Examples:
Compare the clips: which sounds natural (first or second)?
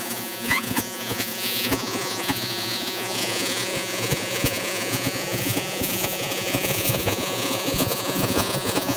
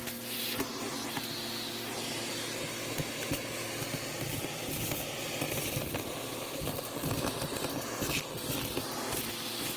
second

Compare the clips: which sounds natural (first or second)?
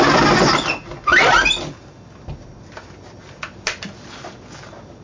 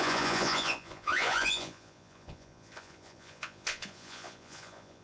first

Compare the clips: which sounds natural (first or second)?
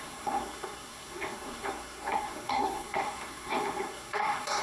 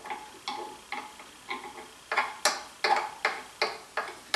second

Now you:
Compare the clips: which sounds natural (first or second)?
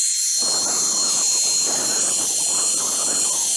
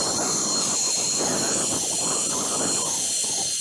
first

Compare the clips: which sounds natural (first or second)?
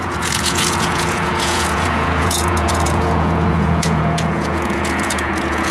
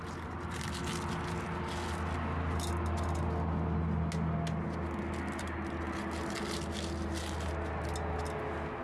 second